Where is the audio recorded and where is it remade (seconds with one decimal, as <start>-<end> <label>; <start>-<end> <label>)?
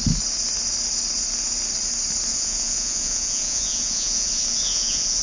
0.0-2.3 recorded; 2.3-5.2 remade